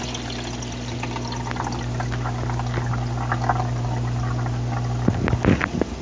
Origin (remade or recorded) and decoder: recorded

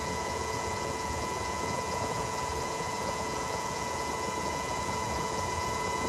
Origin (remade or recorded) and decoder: remade, vocoder, Vocos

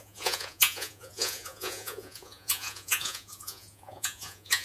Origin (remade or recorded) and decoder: remade, vocoder, Vocos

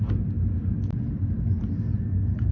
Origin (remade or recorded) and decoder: recorded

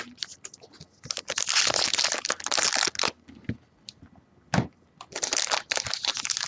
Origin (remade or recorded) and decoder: recorded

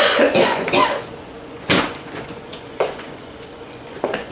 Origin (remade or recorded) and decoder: remade, vocoder, Vocos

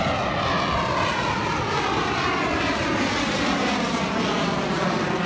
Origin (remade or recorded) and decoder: recorded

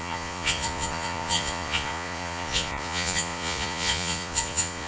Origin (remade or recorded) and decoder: remade, vocoder, Vocos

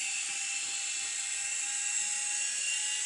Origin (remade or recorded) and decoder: recorded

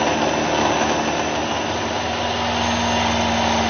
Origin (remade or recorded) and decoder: recorded